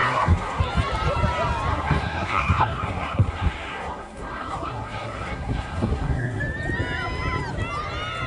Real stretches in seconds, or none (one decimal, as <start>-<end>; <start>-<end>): 0.6-1.7; 6.4-8.3